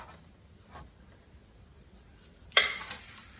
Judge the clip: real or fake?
real